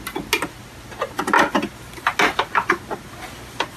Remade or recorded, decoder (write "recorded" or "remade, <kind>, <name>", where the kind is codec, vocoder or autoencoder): recorded